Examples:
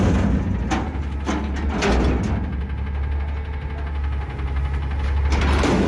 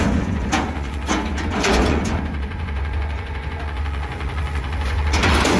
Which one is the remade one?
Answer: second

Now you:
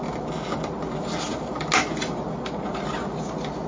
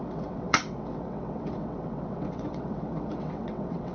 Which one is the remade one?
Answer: second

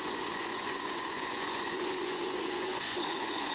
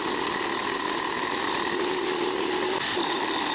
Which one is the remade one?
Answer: first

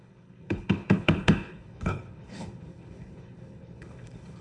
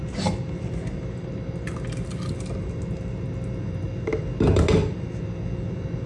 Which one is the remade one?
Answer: first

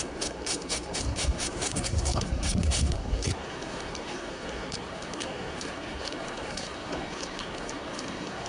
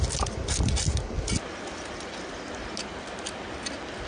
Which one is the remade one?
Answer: first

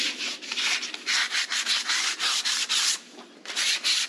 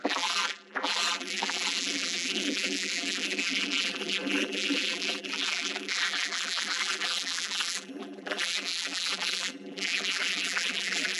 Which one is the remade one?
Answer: second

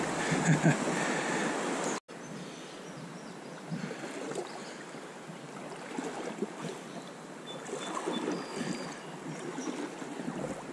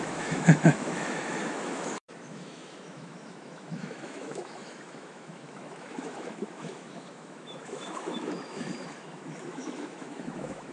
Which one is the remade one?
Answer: second